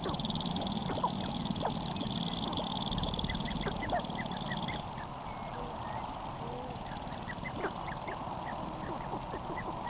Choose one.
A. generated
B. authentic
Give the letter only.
B